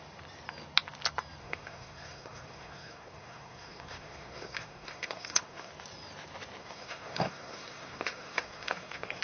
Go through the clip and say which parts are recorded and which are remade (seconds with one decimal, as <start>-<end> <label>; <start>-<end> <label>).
0.0-1.4 recorded; 1.4-5.7 remade; 5.7-6.6 recorded; 6.6-9.2 remade